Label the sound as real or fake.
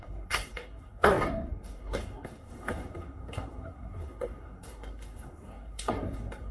fake